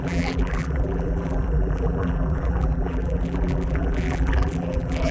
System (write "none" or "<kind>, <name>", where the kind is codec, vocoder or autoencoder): vocoder, BigVGAN v2